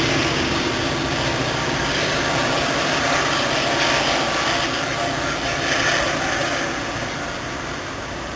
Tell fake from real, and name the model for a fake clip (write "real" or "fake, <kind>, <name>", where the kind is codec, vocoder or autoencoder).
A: real